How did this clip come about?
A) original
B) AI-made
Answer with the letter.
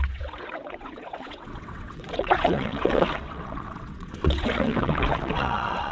B